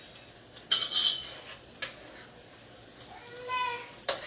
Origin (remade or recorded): recorded